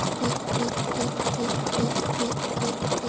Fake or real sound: real